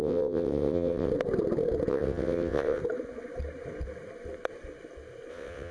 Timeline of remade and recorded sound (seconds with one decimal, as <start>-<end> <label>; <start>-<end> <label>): 0.0-1.1 remade; 1.1-1.9 recorded; 1.9-2.8 remade; 2.8-5.3 recorded; 5.3-5.7 remade